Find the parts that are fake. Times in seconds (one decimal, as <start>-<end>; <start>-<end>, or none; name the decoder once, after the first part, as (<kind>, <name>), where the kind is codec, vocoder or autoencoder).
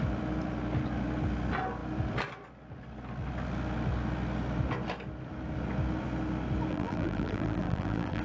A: 6.7-8.2 (vocoder, BigVGAN v2)